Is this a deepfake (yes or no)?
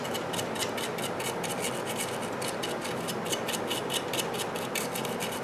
no